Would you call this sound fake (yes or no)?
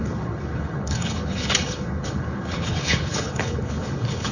yes